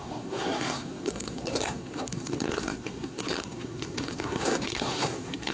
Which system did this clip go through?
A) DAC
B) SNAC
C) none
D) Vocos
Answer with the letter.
B